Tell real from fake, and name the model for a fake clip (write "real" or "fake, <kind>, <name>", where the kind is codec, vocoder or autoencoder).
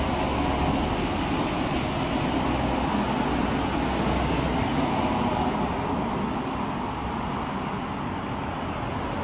real